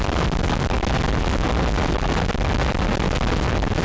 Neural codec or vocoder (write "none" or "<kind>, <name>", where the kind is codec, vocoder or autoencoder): none